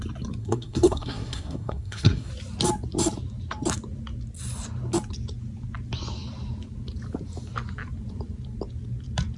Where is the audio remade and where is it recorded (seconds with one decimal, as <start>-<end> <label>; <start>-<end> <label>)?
0.0-0.4 recorded; 0.4-2.3 remade; 2.3-9.4 recorded